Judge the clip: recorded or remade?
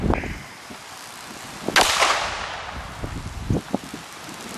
recorded